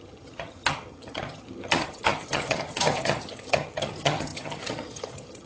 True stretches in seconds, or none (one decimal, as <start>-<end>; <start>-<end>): none